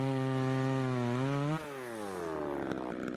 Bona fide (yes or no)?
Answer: yes